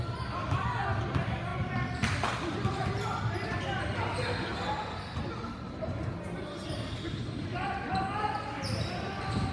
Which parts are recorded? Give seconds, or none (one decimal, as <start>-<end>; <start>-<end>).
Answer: 0.0-1.5; 3.2-9.5